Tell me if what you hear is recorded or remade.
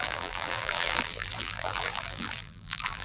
remade